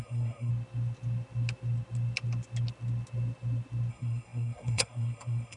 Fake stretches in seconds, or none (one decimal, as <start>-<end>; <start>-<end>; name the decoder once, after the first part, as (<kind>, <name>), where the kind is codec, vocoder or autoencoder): 0.0-0.5 (codec, SNAC); 3.9-5.6